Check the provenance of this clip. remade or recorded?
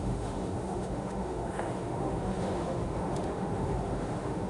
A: remade